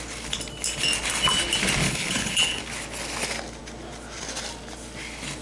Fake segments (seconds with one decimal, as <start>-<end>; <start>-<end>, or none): 1.8-2.6